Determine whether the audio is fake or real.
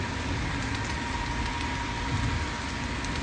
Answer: real